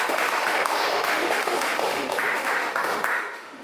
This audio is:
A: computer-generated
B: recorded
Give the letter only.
A